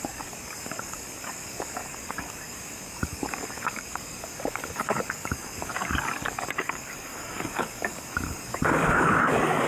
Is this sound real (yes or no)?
no